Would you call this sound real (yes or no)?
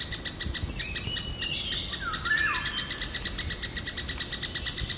yes